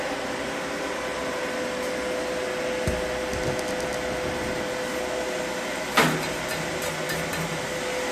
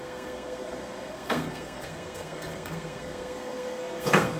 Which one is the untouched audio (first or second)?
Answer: first